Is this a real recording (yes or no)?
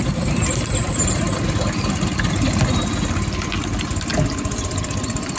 yes